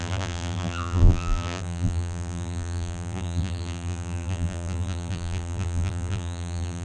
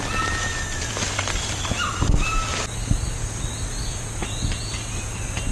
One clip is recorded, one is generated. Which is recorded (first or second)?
second